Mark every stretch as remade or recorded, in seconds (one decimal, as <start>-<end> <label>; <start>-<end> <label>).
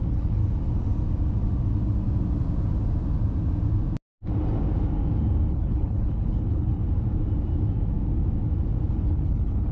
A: 0.0-0.4 remade; 0.4-5.5 recorded; 5.5-6.8 remade; 6.8-8.9 recorded; 8.9-9.7 remade